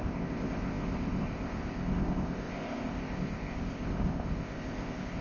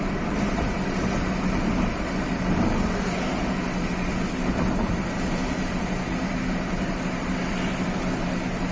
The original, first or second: second